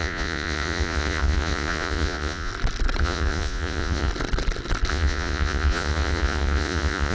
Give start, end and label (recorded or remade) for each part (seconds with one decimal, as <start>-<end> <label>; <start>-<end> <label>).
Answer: 0.0-2.5 remade; 2.5-3.0 recorded; 3.0-4.1 remade; 4.1-4.9 recorded; 4.9-7.1 remade